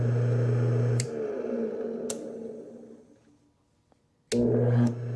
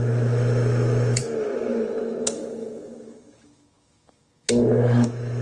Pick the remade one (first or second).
second